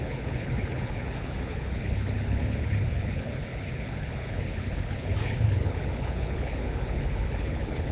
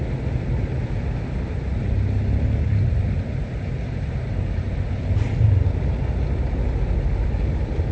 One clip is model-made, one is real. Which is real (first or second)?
second